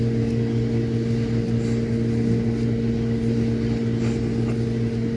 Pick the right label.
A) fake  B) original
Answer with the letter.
B